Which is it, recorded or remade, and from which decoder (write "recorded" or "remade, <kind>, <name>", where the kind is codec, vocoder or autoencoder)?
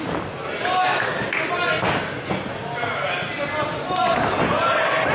recorded